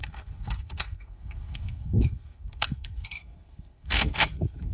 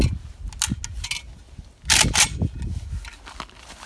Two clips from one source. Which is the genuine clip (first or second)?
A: second